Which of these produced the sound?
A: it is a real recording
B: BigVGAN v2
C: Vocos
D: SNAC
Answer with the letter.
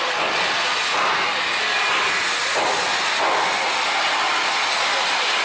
A